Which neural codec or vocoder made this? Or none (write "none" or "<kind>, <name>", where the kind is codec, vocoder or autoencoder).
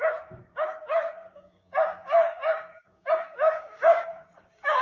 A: codec, DAC